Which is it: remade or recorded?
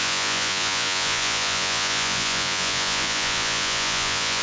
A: remade